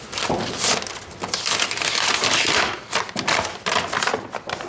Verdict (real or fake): real